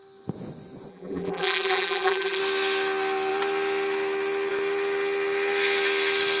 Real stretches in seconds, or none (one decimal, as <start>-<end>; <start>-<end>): 0.0-0.9; 2.4-6.4